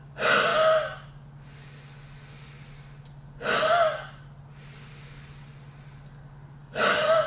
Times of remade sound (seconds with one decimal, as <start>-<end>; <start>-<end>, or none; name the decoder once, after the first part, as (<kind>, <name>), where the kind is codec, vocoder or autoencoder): 6.6-7.3 (codec, DAC)